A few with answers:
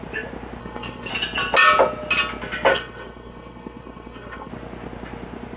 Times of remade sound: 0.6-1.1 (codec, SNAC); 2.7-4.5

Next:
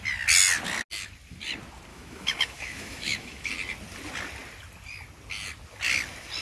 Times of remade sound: 1.9-3.5 (autoencoder, DAC-VAE)

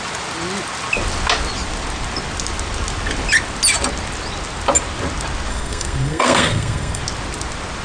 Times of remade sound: 5.5-7.0 (codec, SNAC)

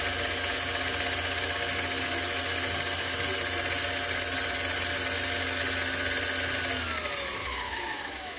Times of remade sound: 7.4-8.4 (autoencoder, DAC-VAE)

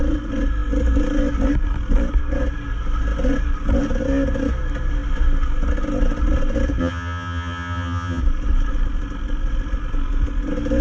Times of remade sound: 6.8-8.2 (vocoder, HiFi-GAN)

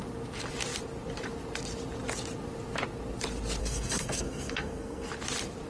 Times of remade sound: 3.6-5.1 (codec, SNAC)

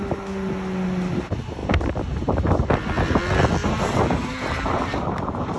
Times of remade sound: 1.6-2.5 (vocoder, BigVGAN v2); 3.6-5.6

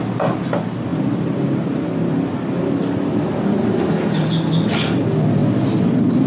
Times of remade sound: none